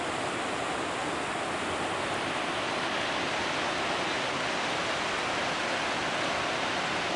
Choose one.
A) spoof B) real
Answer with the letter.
B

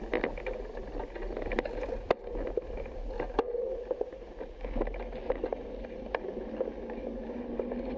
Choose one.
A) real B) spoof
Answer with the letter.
A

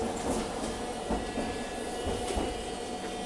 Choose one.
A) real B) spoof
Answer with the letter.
A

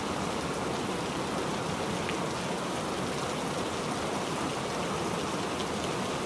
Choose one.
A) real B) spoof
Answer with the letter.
A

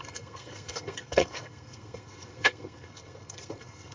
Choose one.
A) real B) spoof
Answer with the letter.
B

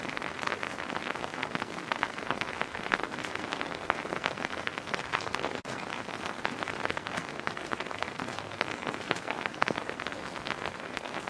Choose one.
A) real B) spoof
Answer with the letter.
B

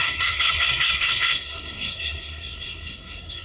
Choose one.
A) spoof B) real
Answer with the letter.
A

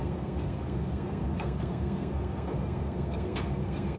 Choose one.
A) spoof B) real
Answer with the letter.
A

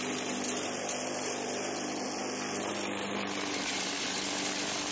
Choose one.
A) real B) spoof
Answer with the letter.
A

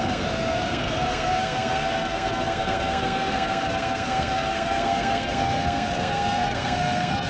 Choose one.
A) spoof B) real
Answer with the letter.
A